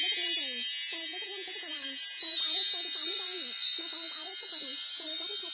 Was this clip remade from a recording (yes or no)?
yes